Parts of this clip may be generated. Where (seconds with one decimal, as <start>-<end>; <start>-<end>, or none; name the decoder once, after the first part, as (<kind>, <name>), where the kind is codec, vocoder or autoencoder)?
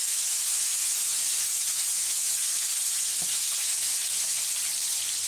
0.0-4.5 (autoencoder, DAC-VAE)